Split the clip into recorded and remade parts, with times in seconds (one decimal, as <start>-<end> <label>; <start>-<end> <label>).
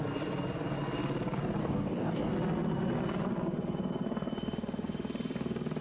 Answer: 0.0-1.6 recorded; 1.6-2.3 remade; 2.3-5.8 recorded